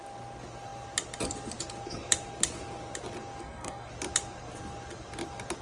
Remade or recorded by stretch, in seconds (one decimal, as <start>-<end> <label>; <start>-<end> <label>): 0.0-3.4 recorded; 3.4-3.9 remade; 3.9-5.6 recorded